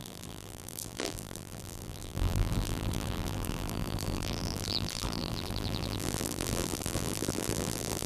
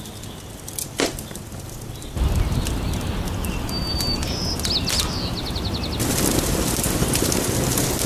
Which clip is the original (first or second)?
second